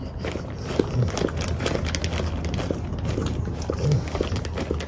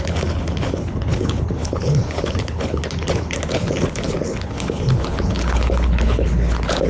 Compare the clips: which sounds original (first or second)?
first